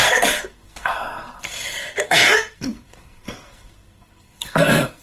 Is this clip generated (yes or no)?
yes